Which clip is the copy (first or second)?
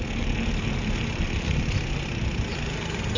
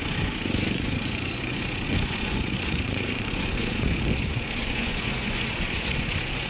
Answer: second